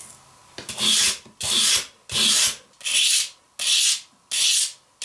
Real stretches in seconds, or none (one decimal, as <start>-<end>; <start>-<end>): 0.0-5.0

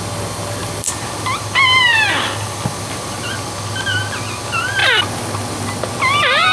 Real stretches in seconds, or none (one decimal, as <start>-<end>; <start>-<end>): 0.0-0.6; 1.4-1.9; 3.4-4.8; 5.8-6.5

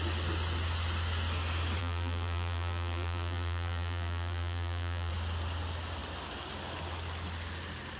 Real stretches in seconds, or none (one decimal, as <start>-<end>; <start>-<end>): 0.0-1.8; 5.1-8.0

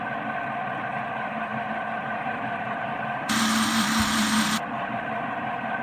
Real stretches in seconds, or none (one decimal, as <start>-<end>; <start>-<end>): 0.0-1.5; 5.0-5.8

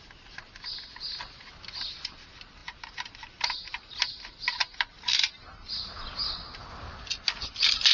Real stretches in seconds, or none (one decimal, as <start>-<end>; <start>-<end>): 0.0-2.6; 3.1-4.6; 5.7-7.9

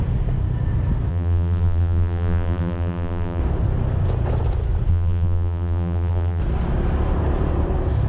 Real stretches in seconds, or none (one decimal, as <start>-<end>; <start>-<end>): 0.0-1.1; 3.4-4.9; 6.4-8.1